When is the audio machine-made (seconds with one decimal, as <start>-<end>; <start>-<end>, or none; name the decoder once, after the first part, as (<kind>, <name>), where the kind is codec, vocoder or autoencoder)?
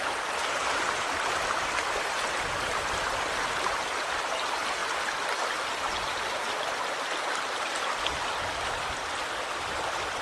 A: 0.0-4.8 (vocoder, BigVGAN v2); 6.5-10.2